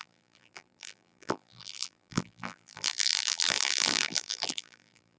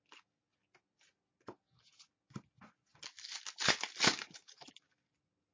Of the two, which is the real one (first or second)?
second